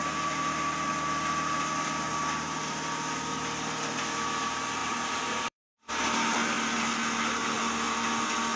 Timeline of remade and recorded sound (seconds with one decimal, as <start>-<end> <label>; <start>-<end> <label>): 0.0-4.8 recorded; 4.8-5.9 remade; 5.9-8.6 recorded